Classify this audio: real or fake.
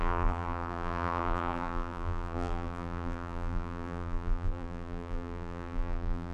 fake